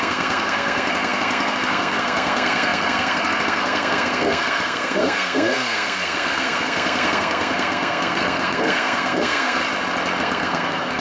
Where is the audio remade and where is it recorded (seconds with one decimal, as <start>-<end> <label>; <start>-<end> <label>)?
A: 0.0-9.6 remade; 9.6-10.2 recorded; 10.2-11.0 remade